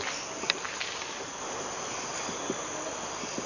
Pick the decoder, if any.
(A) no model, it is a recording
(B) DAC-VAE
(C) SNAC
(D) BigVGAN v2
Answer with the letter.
A